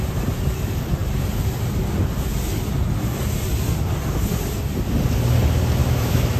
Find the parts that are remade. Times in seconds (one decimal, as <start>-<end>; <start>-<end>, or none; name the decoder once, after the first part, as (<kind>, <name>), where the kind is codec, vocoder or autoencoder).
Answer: 5.8-6.4 (autoencoder, DAC-VAE)